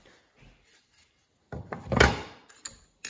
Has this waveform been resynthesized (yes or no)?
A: no